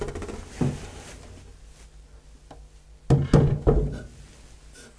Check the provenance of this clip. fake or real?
real